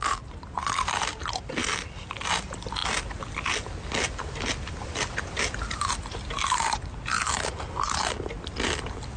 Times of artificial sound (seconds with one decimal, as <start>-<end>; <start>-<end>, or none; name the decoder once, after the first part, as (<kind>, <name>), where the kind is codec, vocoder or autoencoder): none